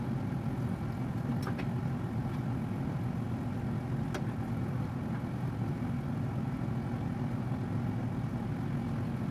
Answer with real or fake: real